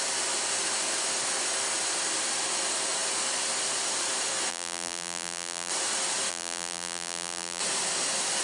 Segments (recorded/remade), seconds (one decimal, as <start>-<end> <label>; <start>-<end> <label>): 0.0-4.5 recorded; 4.5-5.7 remade; 5.7-6.3 recorded; 6.3-7.6 remade; 7.6-8.4 recorded